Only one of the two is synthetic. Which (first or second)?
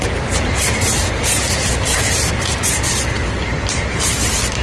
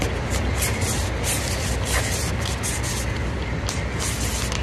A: first